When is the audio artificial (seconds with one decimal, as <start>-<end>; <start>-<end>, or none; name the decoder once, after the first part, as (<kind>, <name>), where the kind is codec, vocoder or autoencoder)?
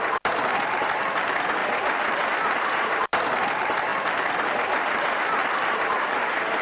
3.9-5.0 (vocoder, BigVGAN v2); 5.4-6.1